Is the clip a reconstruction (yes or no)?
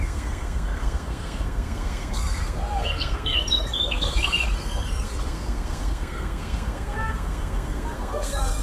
yes